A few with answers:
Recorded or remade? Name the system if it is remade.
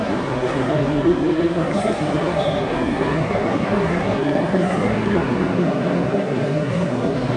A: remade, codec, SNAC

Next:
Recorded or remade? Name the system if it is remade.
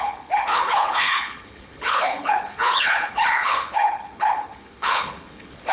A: remade, codec, HILCodec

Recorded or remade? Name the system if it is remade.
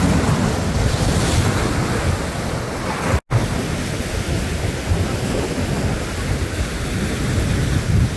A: recorded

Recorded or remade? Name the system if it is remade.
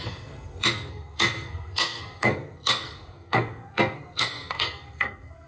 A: remade, codec, SNAC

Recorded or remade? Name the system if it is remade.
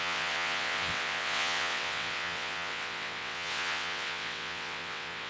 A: remade, vocoder, WaveNeXt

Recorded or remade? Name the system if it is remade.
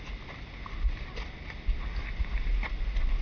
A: recorded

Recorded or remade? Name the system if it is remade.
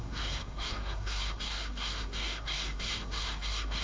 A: remade, codec, SNAC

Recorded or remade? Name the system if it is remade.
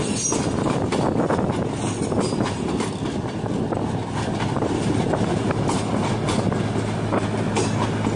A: recorded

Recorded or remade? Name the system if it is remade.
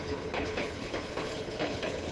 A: remade, codec, HILCodec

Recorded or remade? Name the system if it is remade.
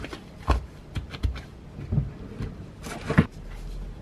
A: recorded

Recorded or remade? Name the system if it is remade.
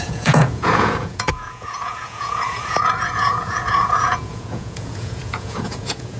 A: remade, vocoder, Vocos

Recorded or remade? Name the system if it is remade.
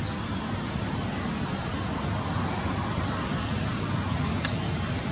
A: recorded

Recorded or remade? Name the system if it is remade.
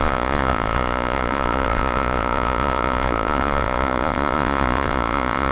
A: remade, vocoder, Vocos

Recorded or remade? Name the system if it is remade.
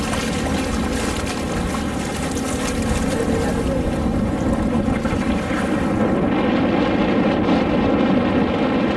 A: recorded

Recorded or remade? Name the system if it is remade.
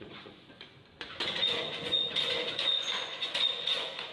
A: remade, vocoder, Vocos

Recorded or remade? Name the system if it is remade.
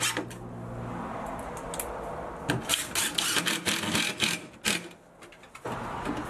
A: recorded